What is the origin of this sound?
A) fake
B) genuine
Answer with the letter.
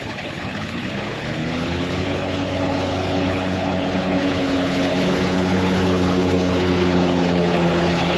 A